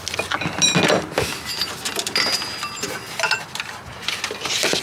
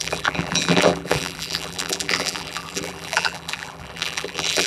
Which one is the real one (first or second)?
first